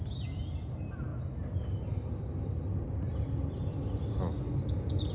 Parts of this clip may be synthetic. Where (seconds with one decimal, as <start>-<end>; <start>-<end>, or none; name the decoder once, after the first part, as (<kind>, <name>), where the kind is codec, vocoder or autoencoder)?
none

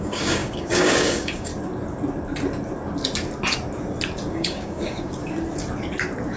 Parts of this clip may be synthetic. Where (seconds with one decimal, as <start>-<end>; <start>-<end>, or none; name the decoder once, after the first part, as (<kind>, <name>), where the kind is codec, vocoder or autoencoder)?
0.0-1.5 (codec, DAC); 4.3-5.2

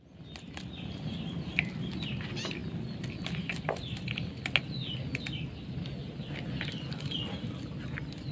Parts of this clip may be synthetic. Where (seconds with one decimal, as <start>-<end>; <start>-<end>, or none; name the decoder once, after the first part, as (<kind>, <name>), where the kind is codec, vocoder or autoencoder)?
none

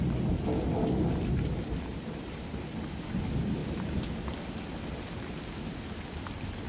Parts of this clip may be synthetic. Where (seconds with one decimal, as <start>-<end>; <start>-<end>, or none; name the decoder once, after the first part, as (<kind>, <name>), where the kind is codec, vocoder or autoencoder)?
1.9-3.2 (vocoder, BigVGAN v2); 3.6-4.1

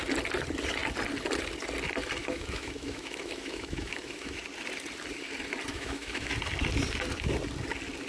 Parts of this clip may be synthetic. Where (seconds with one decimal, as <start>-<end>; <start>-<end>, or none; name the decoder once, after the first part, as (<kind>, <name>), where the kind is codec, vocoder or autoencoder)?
2.2-4.4 (autoencoder, DAC-VAE); 5.7-6.3

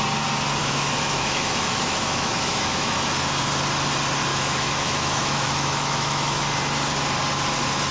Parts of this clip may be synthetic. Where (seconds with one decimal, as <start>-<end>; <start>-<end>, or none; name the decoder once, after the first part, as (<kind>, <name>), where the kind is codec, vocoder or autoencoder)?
0.6-3.0 (autoencoder, DAC-VAE); 4.3-6.4

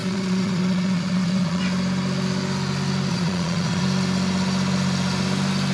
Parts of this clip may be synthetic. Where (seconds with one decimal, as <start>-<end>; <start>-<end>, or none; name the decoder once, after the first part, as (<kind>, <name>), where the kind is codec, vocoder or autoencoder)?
0.0-1.6 (vocoder, Vocos); 3.1-3.8